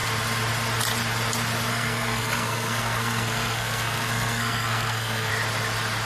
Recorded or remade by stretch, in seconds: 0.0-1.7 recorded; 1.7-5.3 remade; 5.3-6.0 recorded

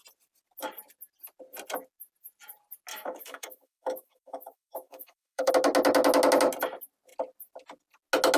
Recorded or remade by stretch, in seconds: 0.0-2.9 recorded; 2.9-5.5 remade; 5.5-8.4 recorded

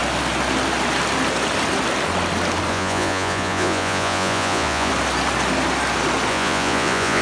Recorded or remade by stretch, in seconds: 0.0-2.7 recorded; 2.7-4.9 remade; 4.9-6.3 recorded; 6.3-7.2 remade

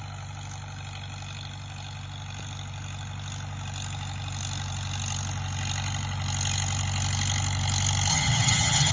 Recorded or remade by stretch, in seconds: 0.0-8.1 recorded; 8.1-8.9 remade

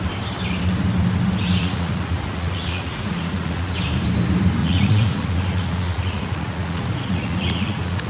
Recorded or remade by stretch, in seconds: 0.0-1.6 recorded; 1.6-3.7 remade; 3.7-4.6 recorded; 4.6-8.1 remade

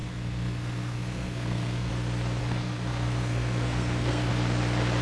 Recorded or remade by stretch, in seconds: 0.0-1.9 remade; 1.9-2.4 recorded; 2.4-4.3 remade; 4.3-5.0 recorded

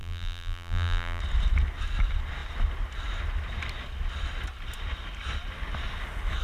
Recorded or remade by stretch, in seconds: 0.0-1.2 remade; 1.2-6.4 recorded